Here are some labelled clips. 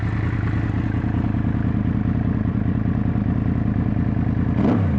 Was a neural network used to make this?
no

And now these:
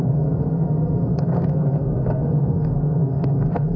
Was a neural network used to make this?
yes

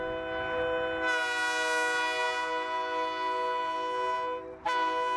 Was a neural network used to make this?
no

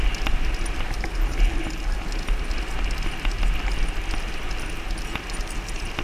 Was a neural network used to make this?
no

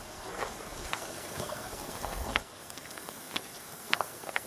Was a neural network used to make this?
yes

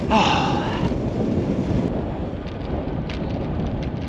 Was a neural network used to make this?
no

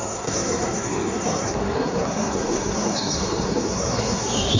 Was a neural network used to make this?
yes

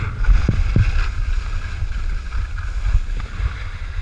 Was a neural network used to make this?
no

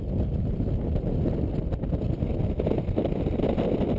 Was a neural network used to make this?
no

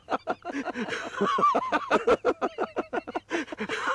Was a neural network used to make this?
no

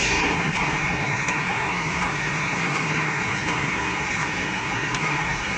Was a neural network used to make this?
yes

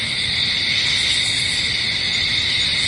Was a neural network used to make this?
no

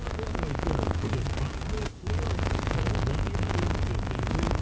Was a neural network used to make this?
no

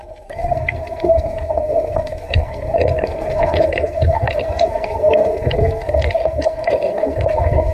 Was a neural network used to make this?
yes